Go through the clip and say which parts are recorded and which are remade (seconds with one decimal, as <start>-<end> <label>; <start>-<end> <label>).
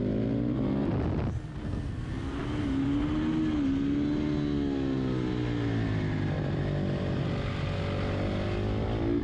0.0-1.6 recorded; 1.6-2.1 remade; 2.1-9.2 recorded